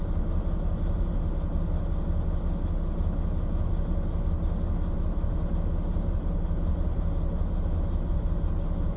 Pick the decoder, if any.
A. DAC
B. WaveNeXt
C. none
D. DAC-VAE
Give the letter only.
C